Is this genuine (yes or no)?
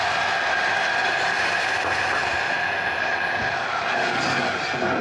yes